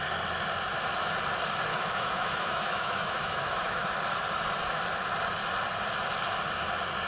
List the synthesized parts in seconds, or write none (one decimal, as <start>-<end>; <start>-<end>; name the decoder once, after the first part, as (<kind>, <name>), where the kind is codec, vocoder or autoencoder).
1.7-3.9 (autoencoder, DAC-VAE)